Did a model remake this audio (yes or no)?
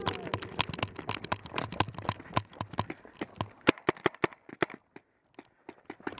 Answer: no